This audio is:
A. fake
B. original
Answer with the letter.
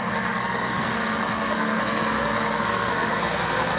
A